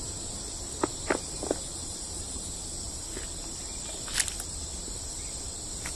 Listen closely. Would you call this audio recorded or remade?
recorded